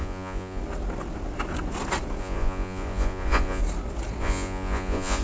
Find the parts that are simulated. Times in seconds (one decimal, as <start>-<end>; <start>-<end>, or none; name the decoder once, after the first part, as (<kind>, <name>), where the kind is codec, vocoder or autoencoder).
0.0-0.6 (vocoder, Vocos); 2.2-3.6; 4.2-5.2

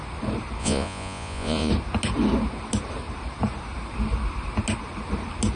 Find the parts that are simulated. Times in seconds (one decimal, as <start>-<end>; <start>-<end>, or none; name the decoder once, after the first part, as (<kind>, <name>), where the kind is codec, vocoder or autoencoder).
0.6-1.7 (vocoder, Vocos)

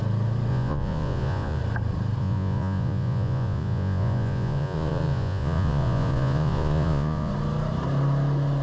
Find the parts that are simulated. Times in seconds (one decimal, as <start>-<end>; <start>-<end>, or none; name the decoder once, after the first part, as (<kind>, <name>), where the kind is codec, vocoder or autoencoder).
0.5-1.6 (vocoder, Vocos); 2.2-7.3

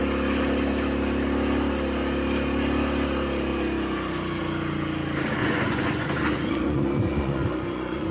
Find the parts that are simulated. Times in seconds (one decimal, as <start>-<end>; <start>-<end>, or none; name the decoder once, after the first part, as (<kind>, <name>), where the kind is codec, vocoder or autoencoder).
5.4-8.1 (vocoder, Vocos)